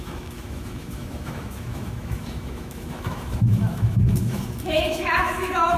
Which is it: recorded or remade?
remade